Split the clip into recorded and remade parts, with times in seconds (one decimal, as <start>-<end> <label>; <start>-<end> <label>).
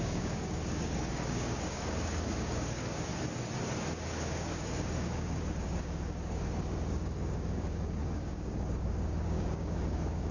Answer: 0.0-3.1 remade; 3.1-4.1 recorded; 4.1-10.3 remade